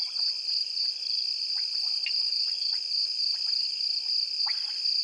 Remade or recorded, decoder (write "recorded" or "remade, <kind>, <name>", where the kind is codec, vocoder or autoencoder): recorded